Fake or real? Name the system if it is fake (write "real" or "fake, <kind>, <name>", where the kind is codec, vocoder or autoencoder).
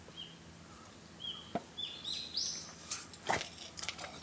real